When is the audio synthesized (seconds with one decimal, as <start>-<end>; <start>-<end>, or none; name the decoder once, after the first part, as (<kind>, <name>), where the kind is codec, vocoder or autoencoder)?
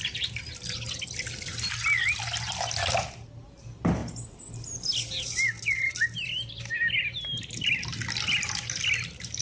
none